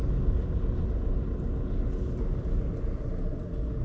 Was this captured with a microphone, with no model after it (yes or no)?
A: yes